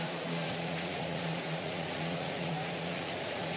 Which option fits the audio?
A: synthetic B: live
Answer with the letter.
A